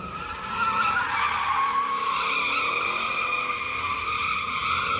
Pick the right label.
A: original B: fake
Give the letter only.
A